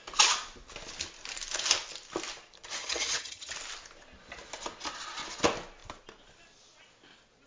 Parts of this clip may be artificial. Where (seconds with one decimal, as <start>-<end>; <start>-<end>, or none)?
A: 2.8-3.5